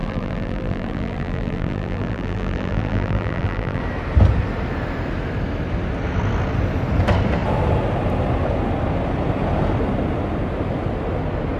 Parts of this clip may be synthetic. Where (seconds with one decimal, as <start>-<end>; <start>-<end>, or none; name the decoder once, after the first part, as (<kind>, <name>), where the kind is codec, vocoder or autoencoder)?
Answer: 0.0-3.8 (vocoder, BigVGAN v2)